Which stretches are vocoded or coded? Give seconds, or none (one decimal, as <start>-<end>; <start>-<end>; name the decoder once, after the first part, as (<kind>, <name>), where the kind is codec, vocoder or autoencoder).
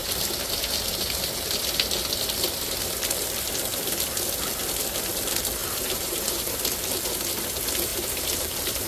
5.6-6.6 (vocoder, BigVGAN v2); 7.9-8.9